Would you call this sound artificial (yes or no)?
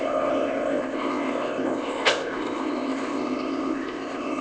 yes